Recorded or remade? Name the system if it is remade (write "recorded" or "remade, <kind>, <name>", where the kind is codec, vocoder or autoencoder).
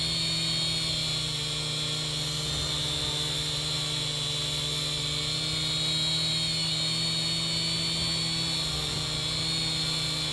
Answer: recorded